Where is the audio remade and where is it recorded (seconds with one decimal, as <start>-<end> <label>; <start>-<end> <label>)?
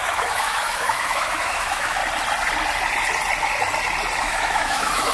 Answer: 0.0-2.0 remade; 2.0-4.2 recorded; 4.2-5.1 remade